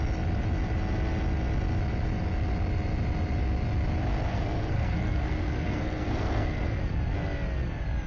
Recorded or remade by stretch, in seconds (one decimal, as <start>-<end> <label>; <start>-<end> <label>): 0.0-4.3 recorded; 4.3-6.8 remade; 6.8-8.1 recorded